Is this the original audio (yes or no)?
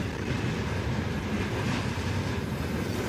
yes